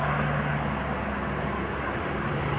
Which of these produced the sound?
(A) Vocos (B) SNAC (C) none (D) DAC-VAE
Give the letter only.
C